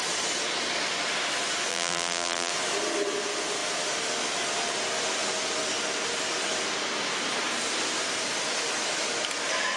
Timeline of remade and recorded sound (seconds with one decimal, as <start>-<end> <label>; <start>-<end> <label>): 0.0-1.7 recorded; 1.7-2.5 remade; 2.5-9.8 recorded